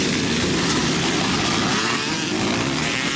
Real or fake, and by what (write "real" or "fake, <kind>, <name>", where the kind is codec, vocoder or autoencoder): fake, vocoder, BigVGAN v2